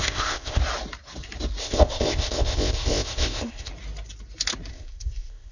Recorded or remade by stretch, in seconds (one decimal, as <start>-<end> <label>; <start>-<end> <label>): 0.0-0.6 remade; 0.6-1.6 recorded; 1.6-3.7 remade; 3.7-4.7 recorded; 4.7-5.5 remade